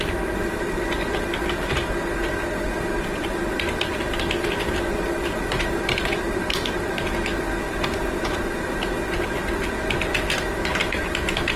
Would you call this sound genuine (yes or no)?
yes